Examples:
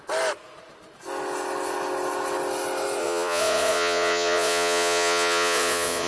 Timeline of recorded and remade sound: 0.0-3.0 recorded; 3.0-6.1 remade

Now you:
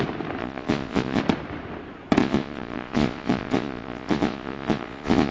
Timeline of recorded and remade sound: 0.0-0.4 recorded; 0.4-1.2 remade; 1.2-2.2 recorded; 2.2-5.3 remade

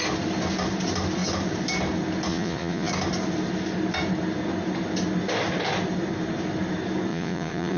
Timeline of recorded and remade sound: 0.0-2.3 recorded; 2.3-2.9 remade; 2.9-7.1 recorded; 7.1-7.8 remade

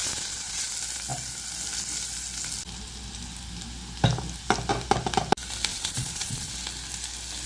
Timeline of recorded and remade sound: 0.0-0.7 remade; 0.7-5.7 recorded; 5.7-6.5 remade; 6.5-7.5 recorded